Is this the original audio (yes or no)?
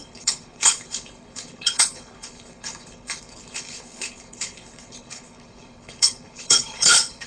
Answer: no